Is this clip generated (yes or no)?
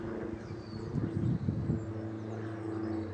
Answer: no